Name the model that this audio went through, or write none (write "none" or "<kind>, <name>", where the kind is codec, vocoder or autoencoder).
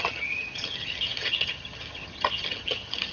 vocoder, HiFi-GAN